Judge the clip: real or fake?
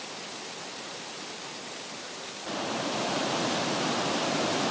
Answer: real